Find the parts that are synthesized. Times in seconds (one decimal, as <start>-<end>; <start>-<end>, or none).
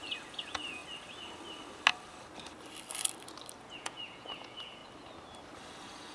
0.0-0.8; 3.6-4.8